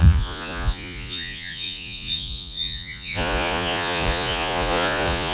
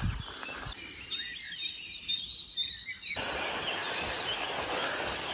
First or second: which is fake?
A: first